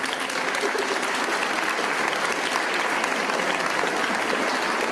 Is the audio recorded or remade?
recorded